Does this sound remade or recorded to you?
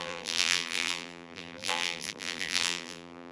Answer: remade